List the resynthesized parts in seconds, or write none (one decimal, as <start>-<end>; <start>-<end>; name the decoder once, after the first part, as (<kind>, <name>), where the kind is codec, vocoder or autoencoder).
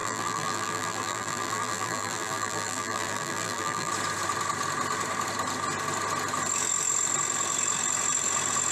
0.0-3.9 (vocoder, BigVGAN v2)